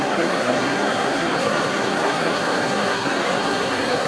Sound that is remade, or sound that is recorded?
remade